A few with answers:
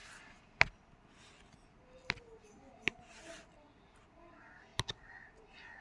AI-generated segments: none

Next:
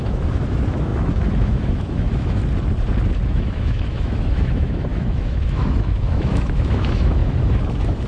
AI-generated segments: 0.0-2.4 (autoencoder, DAC-VAE); 3.3-8.1

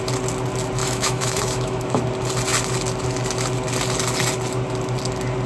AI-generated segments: 0.8-2.0 (autoencoder, DAC-VAE)

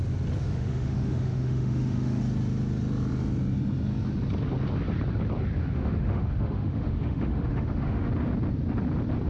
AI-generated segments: 0.4-2.2 (autoencoder, DAC-VAE); 5.6-8.1

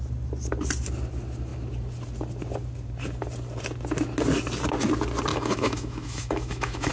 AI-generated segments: 5.3-6.9 (autoencoder, DAC-VAE)

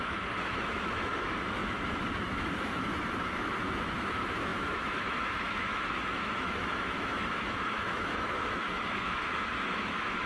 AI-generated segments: 0.0-10.3 (autoencoder, DAC-VAE)

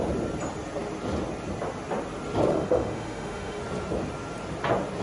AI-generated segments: 2.5-3.6 (autoencoder, DAC-VAE)